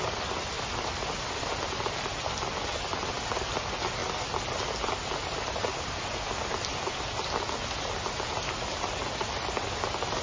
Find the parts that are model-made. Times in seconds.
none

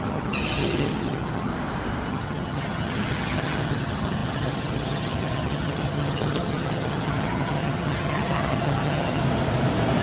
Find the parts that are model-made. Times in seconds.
0.0-1.5 (vocoder, HiFi-GAN); 2.1-9.2

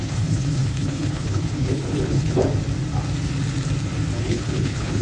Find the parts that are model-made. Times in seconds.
0.0-2.4 (codec, HILCodec); 4.2-5.0